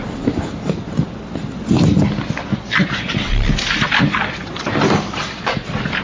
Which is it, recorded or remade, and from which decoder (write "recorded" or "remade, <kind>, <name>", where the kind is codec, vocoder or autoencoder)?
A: remade, vocoder, BigVGAN v2